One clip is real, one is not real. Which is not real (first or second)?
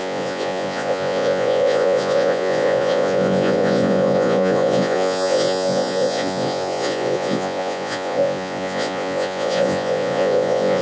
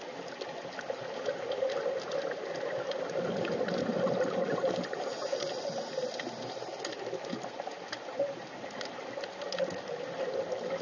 first